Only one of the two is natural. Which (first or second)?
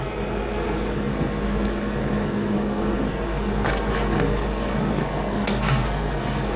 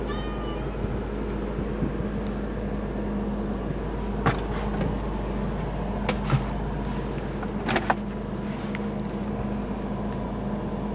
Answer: second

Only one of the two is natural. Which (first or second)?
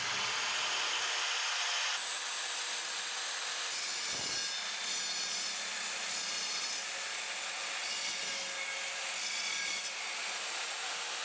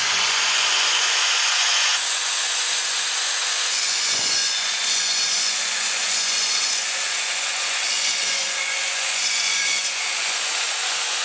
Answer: first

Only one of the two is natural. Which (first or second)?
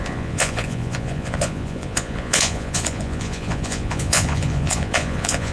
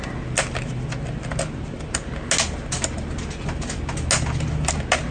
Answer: second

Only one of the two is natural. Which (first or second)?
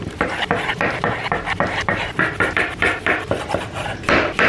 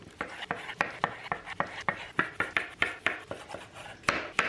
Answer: second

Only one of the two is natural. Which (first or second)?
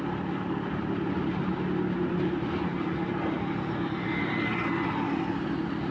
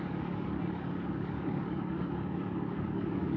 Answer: first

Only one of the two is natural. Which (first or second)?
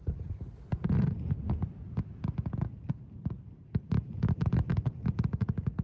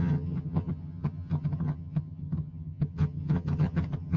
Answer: first